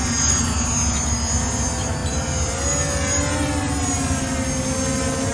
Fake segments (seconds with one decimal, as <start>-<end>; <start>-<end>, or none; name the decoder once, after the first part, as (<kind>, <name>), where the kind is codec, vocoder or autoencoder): none